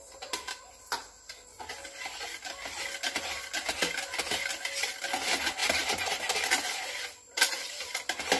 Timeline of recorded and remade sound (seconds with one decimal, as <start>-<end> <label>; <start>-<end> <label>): 0.0-5.6 recorded; 5.6-6.2 remade; 6.2-8.4 recorded